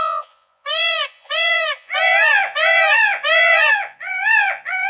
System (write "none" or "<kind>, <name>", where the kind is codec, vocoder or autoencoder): vocoder, Vocos